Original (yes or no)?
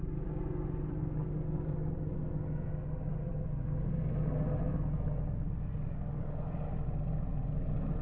yes